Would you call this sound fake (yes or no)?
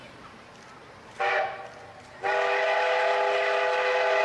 no